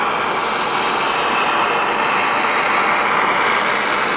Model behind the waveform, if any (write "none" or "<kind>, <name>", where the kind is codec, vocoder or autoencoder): none